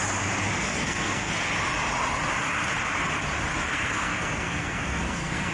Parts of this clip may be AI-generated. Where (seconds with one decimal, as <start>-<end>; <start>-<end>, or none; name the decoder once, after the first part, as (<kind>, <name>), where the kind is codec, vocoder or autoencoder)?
0.7-1.3 (codec, SNAC); 3.7-5.5